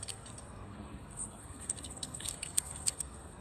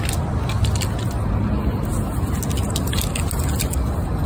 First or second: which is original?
second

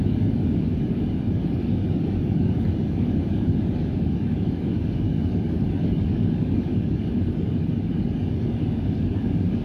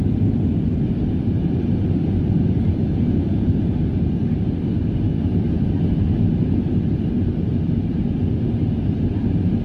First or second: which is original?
second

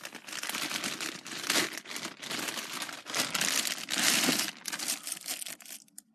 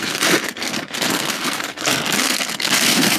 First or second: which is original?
first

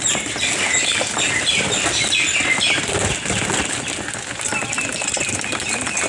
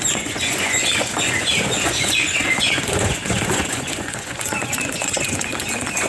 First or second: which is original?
first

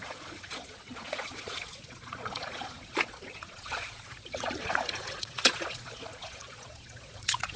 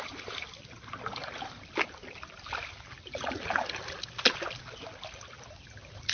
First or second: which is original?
second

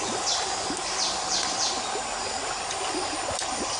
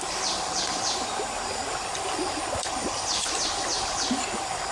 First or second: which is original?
first